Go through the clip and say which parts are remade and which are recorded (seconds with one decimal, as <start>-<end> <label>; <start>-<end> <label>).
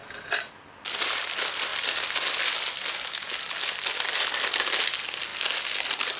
0.0-6.2 recorded